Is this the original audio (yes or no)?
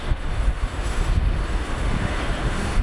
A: no